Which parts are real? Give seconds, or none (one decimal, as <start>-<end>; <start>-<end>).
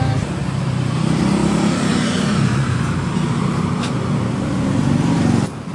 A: 0.0-1.9; 2.8-5.7